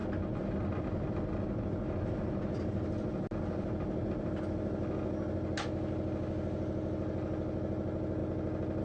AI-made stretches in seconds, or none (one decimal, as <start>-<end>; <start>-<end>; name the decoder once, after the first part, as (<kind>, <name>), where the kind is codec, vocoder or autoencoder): none